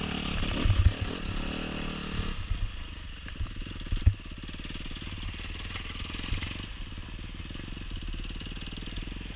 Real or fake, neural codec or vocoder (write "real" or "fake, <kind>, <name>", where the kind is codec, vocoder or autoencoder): real